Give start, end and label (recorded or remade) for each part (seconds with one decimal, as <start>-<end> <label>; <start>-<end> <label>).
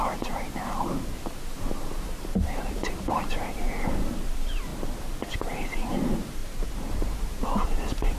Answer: 0.0-4.7 remade; 4.7-5.3 recorded; 5.3-6.4 remade; 6.4-6.9 recorded; 6.9-8.2 remade